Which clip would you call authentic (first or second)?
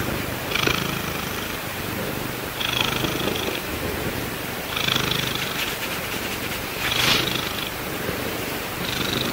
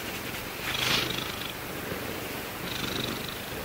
second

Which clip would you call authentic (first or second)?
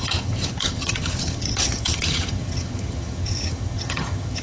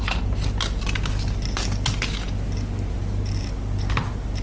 second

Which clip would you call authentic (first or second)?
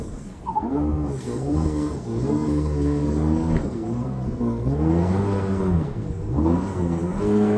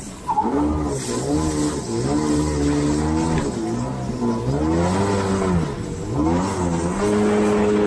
second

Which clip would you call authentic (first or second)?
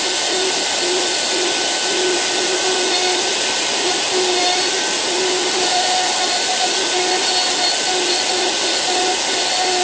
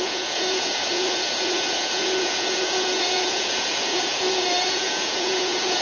first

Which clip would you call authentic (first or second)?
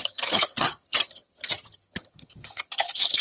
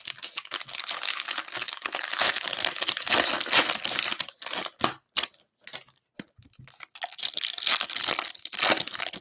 second